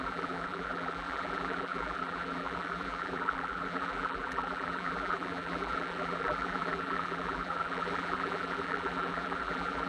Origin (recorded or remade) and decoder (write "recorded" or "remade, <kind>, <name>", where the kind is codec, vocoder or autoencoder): remade, vocoder, BigVGAN v2